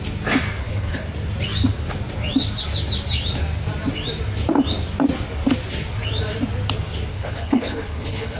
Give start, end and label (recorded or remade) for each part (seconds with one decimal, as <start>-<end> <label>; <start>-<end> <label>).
0.0-0.6 recorded; 0.6-1.1 remade; 1.1-7.1 recorded; 7.1-8.4 remade